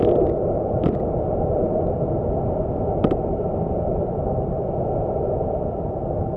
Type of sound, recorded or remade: recorded